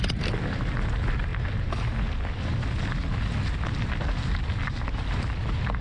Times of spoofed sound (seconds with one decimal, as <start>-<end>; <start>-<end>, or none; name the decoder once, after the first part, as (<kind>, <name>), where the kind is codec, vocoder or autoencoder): none